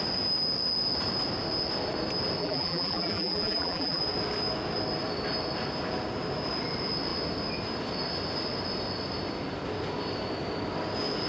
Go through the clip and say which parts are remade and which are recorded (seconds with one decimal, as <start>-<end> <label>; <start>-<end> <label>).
0.0-2.4 recorded; 2.4-4.0 remade; 4.0-11.3 recorded